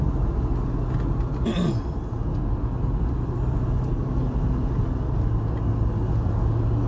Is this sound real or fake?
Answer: real